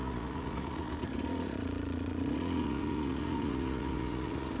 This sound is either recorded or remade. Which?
remade